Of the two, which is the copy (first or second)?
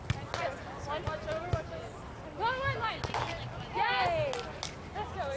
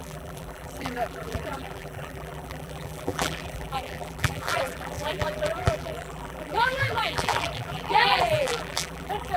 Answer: second